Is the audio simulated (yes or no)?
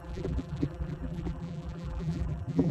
yes